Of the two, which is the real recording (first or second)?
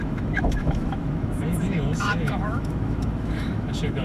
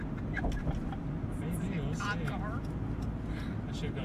second